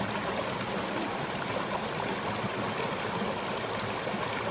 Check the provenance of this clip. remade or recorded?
recorded